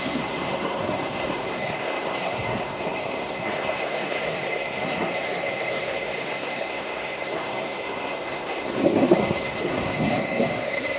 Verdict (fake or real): fake